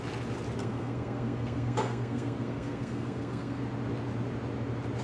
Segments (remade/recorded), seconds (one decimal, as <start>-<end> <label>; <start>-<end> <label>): 0.0-0.6 recorded; 0.6-3.6 remade; 3.6-5.0 recorded